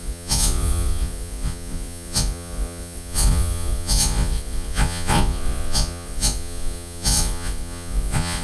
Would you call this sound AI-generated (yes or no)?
yes